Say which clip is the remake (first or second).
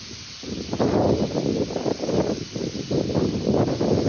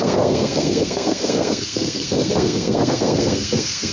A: second